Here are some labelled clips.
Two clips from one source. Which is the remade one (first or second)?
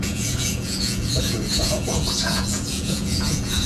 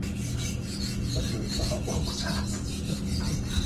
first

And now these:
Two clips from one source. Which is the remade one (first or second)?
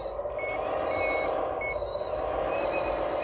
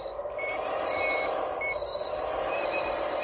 second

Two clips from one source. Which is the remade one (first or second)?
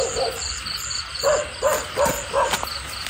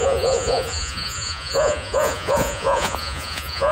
second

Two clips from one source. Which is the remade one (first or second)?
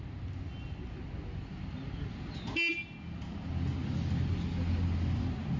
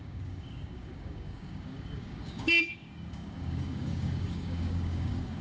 second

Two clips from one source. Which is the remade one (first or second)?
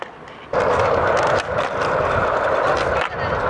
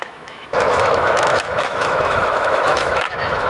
second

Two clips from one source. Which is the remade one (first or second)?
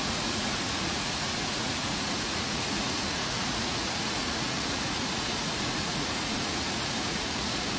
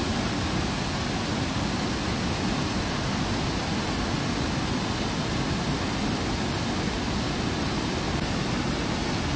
first